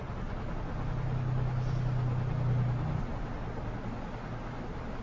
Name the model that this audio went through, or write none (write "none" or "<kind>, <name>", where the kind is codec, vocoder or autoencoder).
none